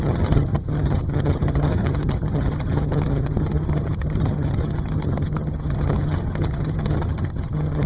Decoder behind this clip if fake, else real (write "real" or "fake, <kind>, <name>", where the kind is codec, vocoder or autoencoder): fake, vocoder, HiFi-GAN